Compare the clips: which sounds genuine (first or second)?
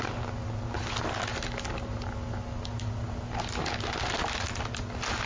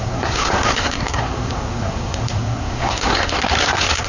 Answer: first